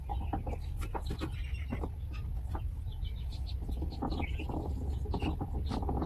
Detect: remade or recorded recorded